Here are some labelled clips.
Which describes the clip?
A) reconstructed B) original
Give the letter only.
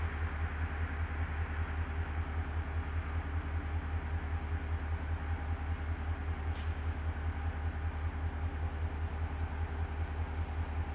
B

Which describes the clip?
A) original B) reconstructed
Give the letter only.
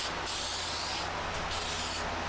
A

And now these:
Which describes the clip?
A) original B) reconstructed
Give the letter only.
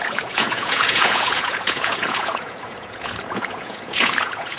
B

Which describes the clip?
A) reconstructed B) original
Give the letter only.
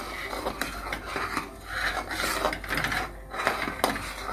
B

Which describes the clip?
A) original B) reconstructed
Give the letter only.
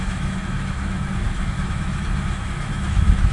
B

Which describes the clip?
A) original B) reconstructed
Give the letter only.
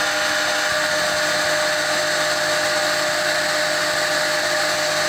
A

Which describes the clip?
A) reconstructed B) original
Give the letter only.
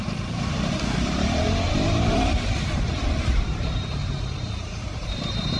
A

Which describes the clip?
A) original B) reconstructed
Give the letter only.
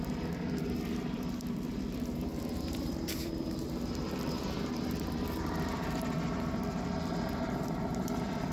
B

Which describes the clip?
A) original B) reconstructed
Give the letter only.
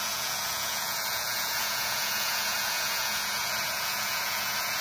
B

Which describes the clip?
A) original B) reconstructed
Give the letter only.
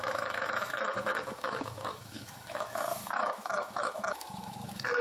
B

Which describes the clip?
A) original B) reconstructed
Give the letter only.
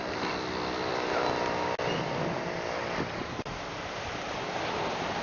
A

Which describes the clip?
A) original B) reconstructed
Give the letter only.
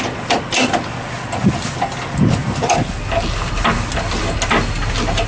A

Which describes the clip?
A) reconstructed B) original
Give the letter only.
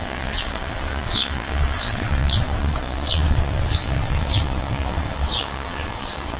A